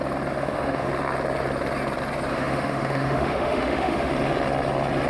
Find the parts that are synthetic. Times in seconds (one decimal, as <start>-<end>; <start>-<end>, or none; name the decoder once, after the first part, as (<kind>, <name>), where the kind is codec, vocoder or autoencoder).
0.4-0.9 (autoencoder, DAC-VAE); 2.3-4.1